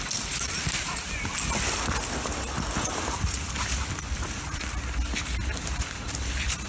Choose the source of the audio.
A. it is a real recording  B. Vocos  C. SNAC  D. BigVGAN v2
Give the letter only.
A